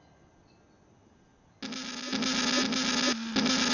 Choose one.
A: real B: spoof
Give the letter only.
A